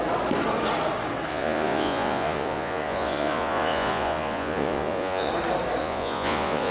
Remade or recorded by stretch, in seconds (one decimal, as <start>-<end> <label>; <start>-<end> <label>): 0.0-1.3 recorded; 1.3-5.3 remade; 5.3-5.8 recorded; 5.8-6.7 remade